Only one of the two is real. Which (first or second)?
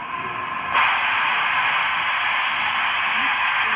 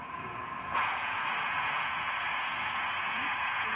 first